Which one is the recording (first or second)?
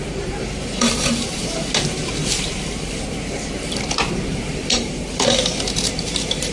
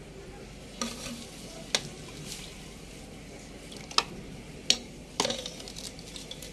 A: second